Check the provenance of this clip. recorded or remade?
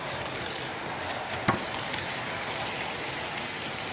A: recorded